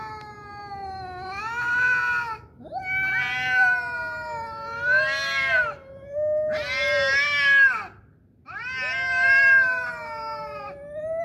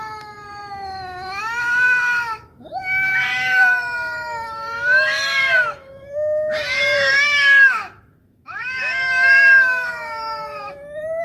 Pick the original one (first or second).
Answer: first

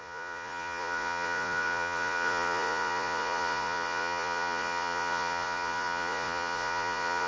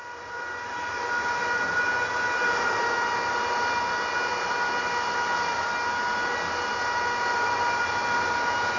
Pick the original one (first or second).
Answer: second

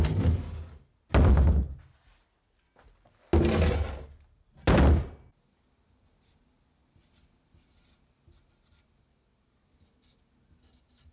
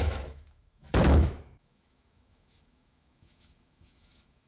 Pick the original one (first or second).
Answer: first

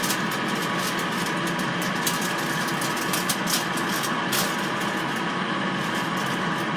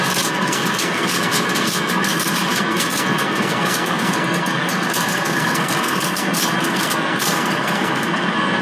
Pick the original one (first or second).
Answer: first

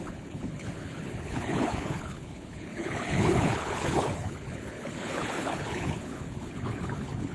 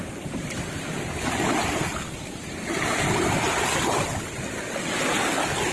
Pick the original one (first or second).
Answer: second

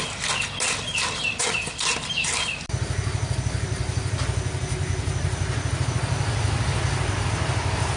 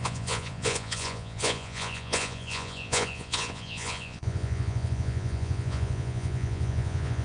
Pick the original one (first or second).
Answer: first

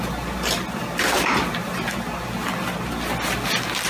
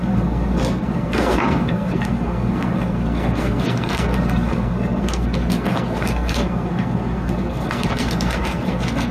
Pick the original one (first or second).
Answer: first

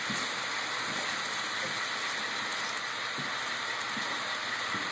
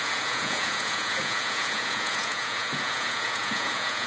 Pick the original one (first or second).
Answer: first